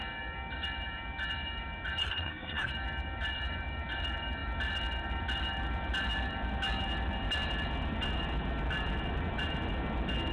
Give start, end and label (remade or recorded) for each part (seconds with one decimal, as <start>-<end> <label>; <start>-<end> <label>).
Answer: 0.0-2.0 recorded; 2.0-2.7 remade; 2.7-10.3 recorded